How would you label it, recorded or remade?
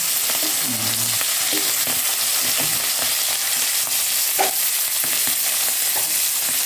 recorded